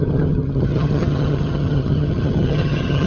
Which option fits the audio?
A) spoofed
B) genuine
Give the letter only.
A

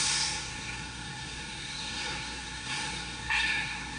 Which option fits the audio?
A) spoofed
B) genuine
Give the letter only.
A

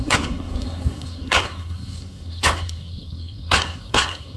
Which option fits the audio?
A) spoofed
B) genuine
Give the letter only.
A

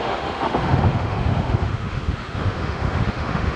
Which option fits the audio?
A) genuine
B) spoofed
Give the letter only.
B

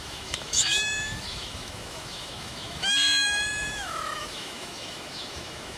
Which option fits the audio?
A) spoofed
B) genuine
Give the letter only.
A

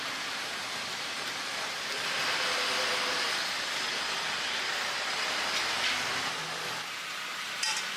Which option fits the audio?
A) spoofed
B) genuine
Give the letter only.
B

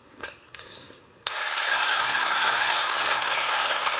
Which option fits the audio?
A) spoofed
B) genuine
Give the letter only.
A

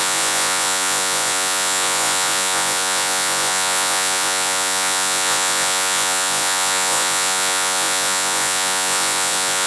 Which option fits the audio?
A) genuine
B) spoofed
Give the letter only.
B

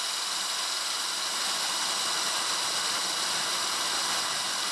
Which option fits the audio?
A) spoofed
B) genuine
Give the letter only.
B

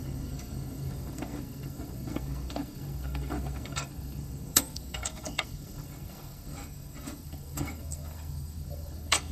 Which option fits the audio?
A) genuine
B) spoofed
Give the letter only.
B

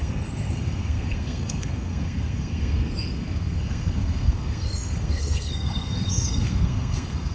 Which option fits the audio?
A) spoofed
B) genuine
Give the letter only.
A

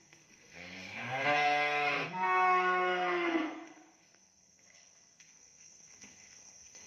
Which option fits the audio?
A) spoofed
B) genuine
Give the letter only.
A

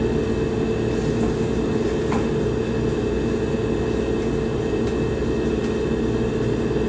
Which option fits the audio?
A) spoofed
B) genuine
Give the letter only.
B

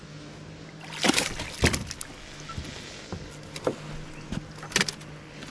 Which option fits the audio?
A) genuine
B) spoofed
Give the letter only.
A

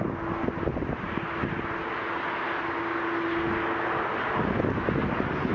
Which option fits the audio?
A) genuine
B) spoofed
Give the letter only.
A